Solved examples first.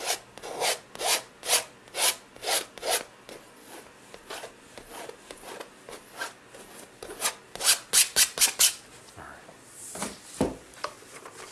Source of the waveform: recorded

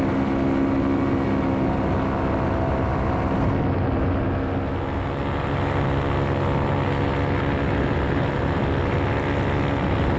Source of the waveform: recorded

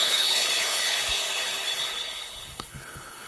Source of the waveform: remade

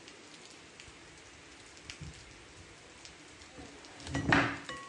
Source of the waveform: recorded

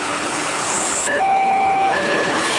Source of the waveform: remade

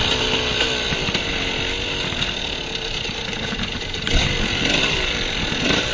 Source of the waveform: recorded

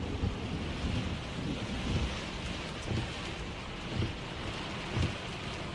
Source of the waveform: recorded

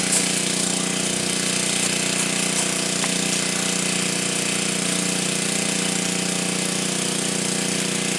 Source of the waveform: recorded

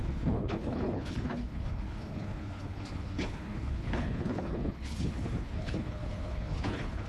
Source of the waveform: remade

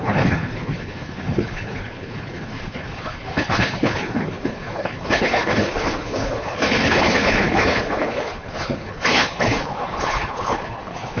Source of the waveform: remade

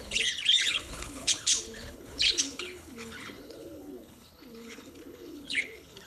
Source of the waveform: remade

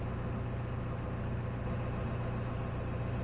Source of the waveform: recorded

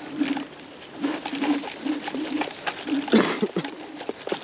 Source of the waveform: recorded